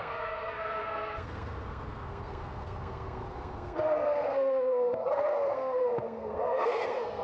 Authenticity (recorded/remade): remade